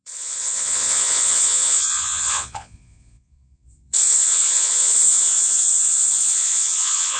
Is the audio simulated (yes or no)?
yes